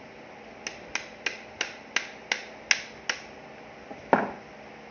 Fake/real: real